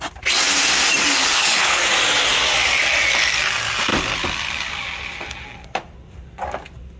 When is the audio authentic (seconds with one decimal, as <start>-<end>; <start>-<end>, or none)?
0.0-1.2; 1.8-7.0